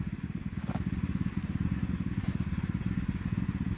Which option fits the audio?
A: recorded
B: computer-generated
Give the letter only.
A